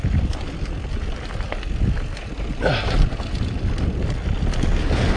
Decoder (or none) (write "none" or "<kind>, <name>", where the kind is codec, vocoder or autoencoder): none